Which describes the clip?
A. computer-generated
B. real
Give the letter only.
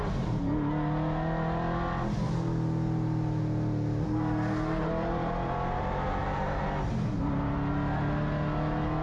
B